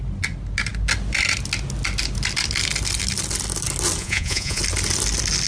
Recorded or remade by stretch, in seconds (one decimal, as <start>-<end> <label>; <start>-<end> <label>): 0.0-4.0 recorded; 4.0-4.6 remade; 4.6-5.5 recorded